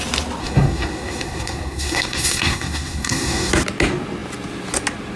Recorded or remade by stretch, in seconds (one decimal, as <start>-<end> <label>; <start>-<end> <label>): 0.0-0.4 recorded; 0.4-3.5 remade; 3.5-5.2 recorded